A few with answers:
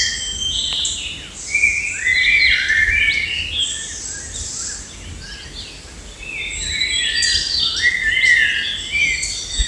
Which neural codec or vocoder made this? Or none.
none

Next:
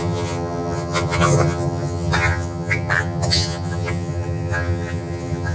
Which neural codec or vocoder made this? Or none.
vocoder, HiFi-GAN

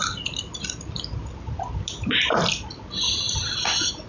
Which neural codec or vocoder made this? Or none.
none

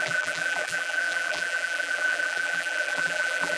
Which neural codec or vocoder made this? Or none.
vocoder, BigVGAN v2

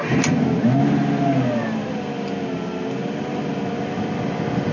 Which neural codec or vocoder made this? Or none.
none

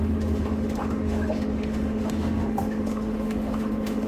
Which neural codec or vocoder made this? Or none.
autoencoder, DAC-VAE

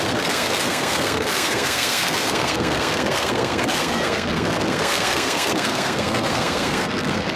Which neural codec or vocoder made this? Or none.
codec, SNAC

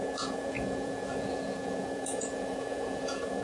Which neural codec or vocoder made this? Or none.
vocoder, Vocos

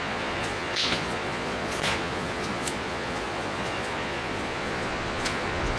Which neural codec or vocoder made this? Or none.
vocoder, Vocos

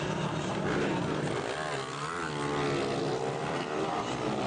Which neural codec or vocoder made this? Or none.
none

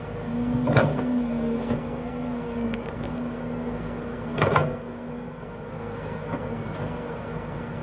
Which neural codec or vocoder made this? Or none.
codec, SNAC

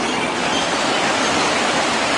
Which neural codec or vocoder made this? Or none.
none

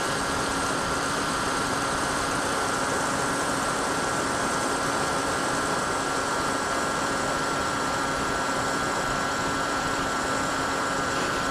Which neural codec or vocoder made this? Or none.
vocoder, BigVGAN v2